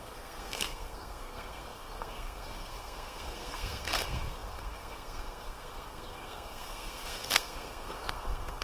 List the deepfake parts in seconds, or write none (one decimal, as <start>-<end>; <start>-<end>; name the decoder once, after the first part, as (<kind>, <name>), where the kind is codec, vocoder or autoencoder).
0.0-8.6 (codec, SNAC)